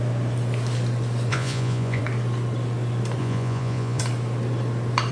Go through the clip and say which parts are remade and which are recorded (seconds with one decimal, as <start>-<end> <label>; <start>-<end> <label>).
0.0-1.3 recorded; 1.3-2.0 remade; 2.0-3.2 recorded; 3.2-4.0 remade; 4.0-5.1 recorded